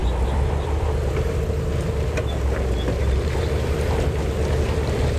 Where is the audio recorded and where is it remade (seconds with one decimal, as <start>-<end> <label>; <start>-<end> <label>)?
0.0-3.0 recorded; 3.0-3.5 remade; 3.5-5.2 recorded